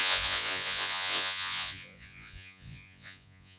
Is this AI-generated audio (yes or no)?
yes